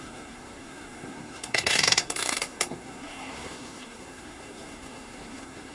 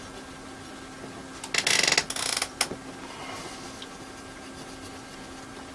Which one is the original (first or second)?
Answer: second